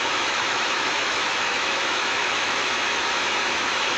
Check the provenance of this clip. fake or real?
fake